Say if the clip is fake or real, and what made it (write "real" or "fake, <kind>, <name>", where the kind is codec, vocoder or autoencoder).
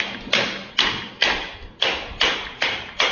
real